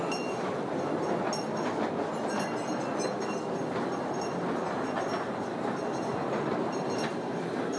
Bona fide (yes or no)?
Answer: yes